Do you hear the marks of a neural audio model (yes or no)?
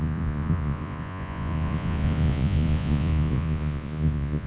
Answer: yes